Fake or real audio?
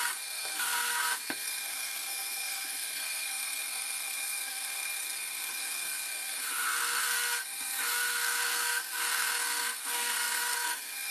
fake